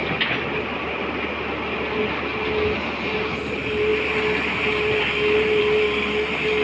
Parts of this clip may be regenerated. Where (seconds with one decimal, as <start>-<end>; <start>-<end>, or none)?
none